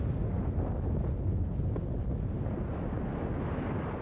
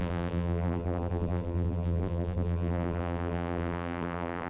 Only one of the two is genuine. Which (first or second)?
first